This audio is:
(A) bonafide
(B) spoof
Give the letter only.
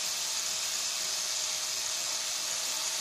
A